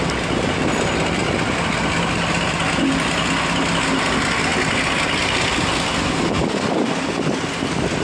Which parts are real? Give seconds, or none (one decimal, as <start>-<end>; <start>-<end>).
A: 0.0-8.0